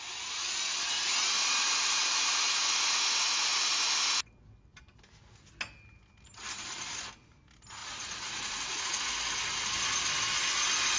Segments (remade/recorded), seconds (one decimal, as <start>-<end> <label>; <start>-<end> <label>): 0.0-7.8 recorded; 7.8-9.1 remade; 9.1-11.0 recorded